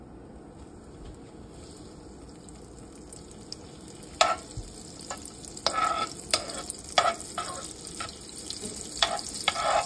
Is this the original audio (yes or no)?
yes